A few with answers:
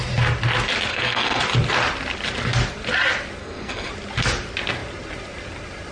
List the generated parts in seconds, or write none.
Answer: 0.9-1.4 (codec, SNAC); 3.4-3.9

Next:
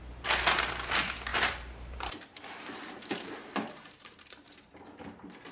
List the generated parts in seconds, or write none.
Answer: 1.3-4.6 (vocoder, BigVGAN v2)

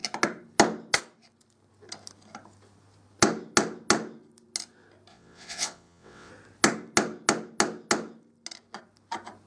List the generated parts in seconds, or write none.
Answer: 5.1-6.3 (vocoder, WaveNeXt)

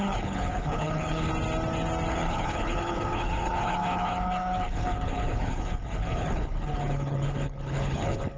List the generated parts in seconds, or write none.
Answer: 0.0-1.3 (codec, HILCodec); 2.1-8.4